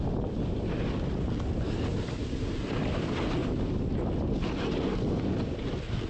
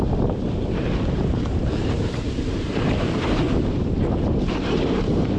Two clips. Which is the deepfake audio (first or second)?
second